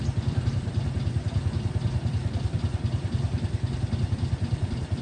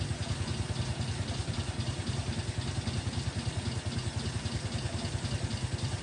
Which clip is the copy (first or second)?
first